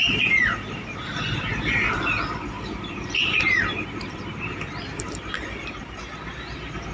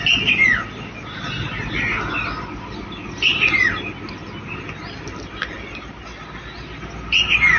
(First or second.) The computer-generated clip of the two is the first